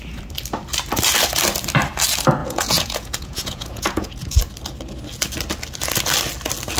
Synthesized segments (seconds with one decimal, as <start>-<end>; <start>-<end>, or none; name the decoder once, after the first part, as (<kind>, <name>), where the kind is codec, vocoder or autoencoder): 2.4-4.4 (vocoder, Vocos)